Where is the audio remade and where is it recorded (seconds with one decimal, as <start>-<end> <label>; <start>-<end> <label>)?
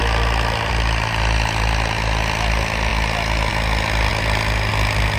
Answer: 0.0-5.2 recorded